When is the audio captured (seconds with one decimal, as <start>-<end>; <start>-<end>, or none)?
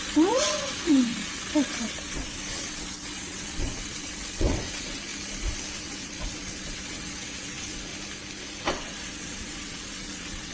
5.1-5.8; 7.9-8.6